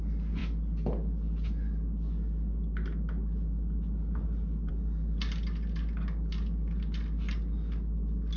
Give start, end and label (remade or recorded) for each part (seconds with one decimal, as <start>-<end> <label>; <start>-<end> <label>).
0.0-8.4 recorded